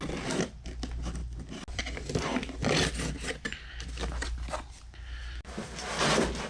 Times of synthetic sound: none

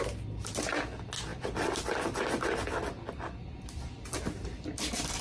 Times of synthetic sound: none

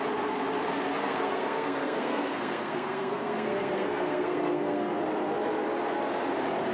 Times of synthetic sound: 1.0-5.0 (codec, SNAC)

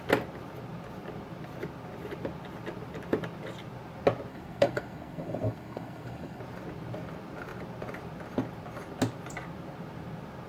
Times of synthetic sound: 4.3-6.4 (codec, SNAC)